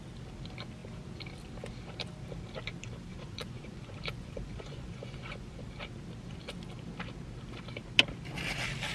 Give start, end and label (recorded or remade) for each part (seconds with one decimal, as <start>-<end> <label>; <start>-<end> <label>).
0.0-3.1 recorded; 3.1-5.6 remade; 5.6-8.9 recorded